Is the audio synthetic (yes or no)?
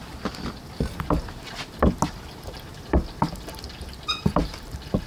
no